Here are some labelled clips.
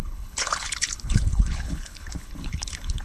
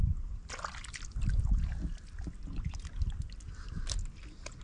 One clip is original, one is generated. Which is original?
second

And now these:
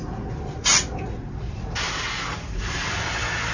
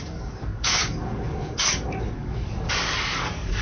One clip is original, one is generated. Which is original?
first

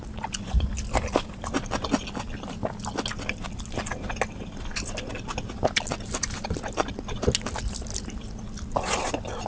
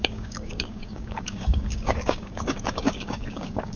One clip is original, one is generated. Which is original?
first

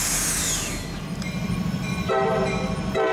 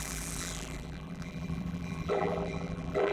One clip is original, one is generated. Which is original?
first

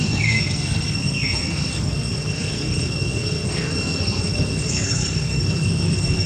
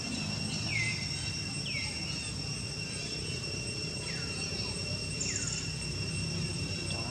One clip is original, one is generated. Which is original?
second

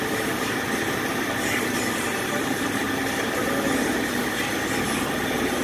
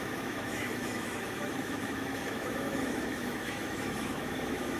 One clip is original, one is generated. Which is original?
first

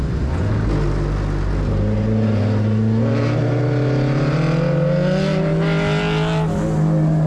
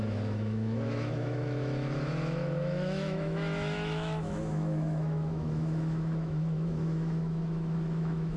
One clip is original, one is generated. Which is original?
first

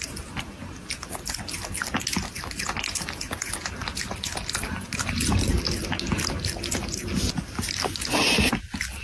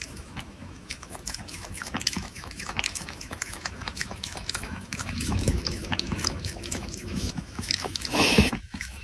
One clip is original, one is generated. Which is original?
first